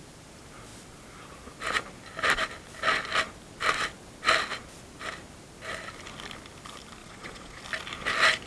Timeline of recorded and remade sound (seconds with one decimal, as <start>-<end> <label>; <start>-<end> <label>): 0.0-7.0 recorded; 7.0-7.6 remade; 7.6-8.5 recorded